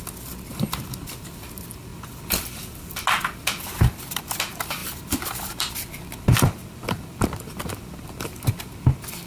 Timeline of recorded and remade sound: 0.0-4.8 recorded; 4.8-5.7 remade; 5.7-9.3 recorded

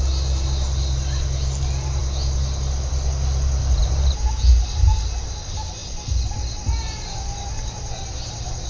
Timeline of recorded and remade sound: 0.0-3.8 recorded; 3.8-4.3 remade; 4.3-8.7 recorded

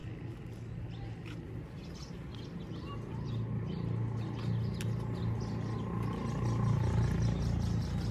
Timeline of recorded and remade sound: 0.0-8.1 recorded